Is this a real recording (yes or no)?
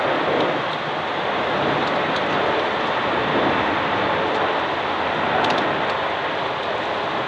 yes